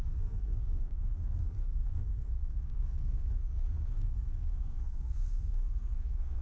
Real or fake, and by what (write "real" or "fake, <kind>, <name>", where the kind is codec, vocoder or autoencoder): fake, codec, SNAC